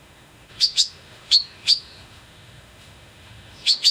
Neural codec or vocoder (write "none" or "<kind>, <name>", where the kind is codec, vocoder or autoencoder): autoencoder, DAC-VAE